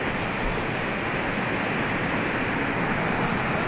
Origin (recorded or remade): recorded